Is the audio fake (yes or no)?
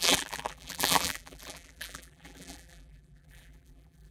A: yes